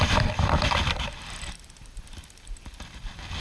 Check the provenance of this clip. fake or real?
fake